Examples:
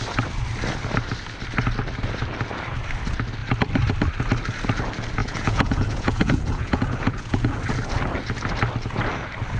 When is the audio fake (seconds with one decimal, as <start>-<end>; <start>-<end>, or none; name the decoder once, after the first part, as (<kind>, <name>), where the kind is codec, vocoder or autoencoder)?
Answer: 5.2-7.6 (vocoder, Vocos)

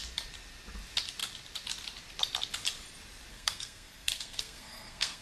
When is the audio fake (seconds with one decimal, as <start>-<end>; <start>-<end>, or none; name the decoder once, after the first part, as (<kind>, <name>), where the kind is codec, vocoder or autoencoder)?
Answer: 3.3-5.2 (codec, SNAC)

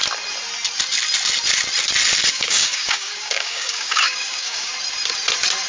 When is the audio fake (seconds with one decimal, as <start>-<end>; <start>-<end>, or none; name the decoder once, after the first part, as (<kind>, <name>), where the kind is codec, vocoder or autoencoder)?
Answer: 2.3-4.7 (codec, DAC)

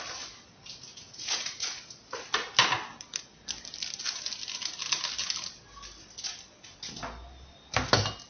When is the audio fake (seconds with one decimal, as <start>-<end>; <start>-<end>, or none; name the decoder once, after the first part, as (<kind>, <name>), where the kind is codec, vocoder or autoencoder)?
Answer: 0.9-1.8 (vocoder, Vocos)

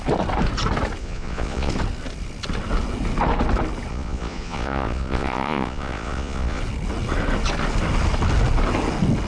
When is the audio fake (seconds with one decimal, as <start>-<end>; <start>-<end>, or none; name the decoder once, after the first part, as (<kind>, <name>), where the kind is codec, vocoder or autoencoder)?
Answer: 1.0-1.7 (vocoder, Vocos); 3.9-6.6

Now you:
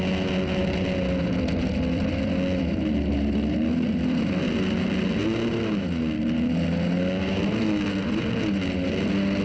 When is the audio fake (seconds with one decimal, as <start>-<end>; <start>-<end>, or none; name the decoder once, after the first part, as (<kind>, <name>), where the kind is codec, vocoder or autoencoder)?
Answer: none